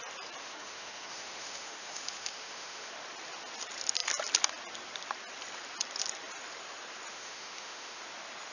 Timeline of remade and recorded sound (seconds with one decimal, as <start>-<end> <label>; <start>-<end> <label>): 0.0-0.4 recorded; 0.4-2.9 remade; 2.9-7.1 recorded; 7.1-8.0 remade; 8.0-8.5 recorded